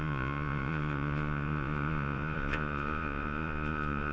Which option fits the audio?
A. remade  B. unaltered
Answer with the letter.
A